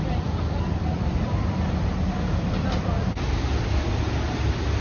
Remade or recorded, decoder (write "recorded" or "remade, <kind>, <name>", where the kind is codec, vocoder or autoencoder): remade, vocoder, BigVGAN v2